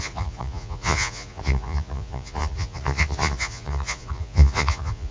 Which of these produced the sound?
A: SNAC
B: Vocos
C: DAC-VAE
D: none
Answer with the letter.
B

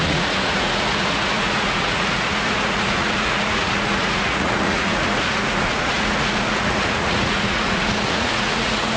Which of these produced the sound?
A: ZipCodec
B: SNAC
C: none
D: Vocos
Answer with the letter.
D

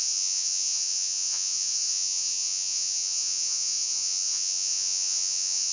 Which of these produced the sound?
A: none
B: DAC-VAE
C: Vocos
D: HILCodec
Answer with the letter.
C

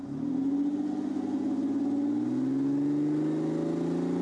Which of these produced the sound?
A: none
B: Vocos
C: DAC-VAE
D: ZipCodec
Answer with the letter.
A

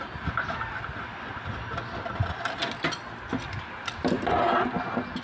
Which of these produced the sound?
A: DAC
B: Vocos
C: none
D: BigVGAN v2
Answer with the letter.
C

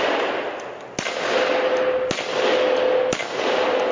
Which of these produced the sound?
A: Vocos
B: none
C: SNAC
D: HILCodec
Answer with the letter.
B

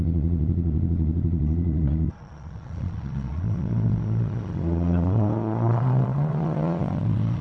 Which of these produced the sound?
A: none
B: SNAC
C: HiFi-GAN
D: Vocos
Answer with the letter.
D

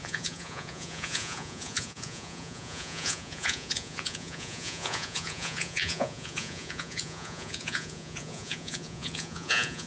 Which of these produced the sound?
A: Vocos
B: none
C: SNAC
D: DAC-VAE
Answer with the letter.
A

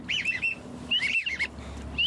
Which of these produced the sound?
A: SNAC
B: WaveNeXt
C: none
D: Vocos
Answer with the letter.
C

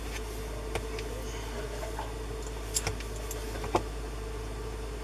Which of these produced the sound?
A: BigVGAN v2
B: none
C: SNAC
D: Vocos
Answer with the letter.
B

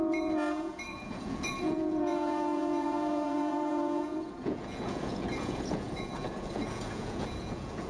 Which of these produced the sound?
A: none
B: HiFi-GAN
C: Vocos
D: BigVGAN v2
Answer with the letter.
C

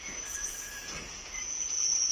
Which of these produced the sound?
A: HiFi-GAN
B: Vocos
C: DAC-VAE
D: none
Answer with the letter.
B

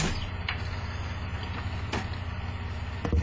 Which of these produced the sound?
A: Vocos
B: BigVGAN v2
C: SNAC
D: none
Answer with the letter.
D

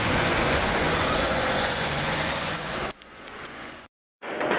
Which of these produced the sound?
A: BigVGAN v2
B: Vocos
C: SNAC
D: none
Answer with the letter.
B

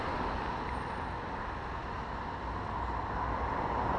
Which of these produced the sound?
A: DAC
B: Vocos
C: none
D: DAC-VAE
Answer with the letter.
C